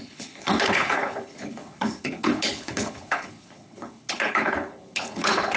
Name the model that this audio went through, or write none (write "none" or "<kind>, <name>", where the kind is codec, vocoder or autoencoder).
codec, HILCodec